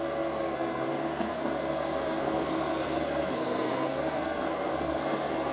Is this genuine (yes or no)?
no